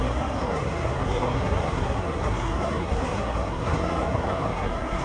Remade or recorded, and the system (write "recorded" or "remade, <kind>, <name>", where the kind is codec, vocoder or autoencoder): remade, codec, SNAC